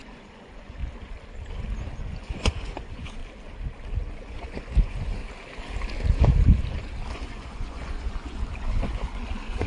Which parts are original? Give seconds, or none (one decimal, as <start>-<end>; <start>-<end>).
0.8-2.0; 3.2-4.1; 5.2-7.1